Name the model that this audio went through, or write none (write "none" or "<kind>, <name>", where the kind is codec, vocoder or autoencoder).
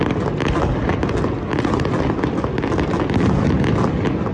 none